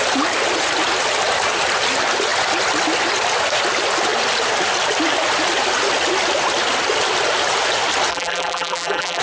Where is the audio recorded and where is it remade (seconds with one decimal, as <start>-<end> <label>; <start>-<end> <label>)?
0.0-8.1 recorded; 8.1-9.2 remade